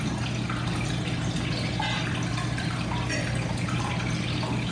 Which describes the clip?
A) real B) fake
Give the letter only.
A